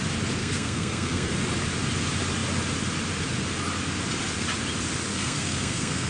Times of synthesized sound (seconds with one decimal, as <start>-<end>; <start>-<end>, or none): 0.4-1.3; 5.1-6.1